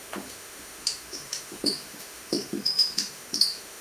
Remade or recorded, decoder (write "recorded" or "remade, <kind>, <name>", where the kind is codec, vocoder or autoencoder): remade, autoencoder, DAC-VAE